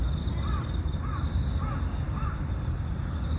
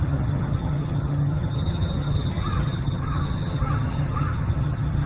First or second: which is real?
first